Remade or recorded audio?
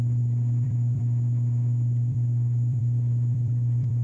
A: remade